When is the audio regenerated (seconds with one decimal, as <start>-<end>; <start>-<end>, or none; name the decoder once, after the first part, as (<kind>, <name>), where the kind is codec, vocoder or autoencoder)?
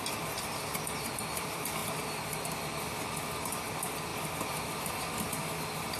none